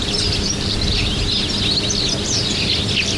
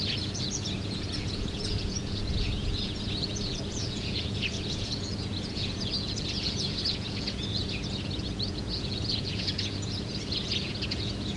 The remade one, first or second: second